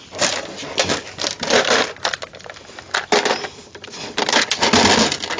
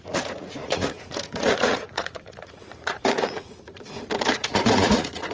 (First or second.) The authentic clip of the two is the first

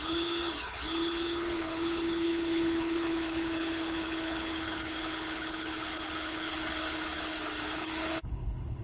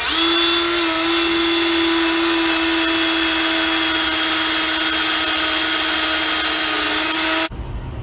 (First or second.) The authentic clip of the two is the second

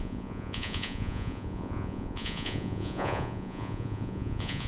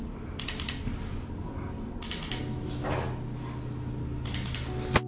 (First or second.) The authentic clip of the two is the second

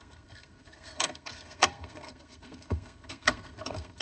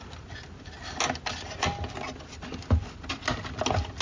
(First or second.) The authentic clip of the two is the second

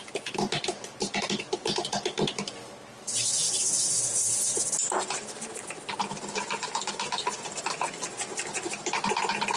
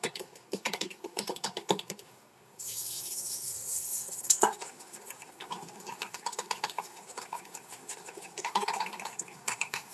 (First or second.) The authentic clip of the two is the first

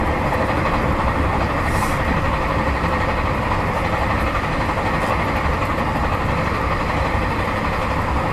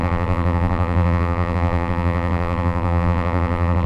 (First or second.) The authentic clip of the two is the first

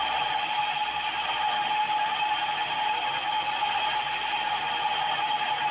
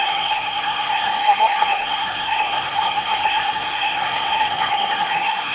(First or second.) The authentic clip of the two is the first